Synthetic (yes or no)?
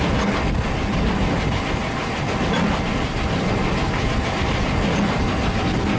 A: no